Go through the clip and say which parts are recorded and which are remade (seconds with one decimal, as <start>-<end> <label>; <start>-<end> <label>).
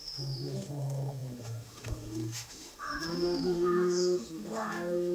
0.0-5.1 remade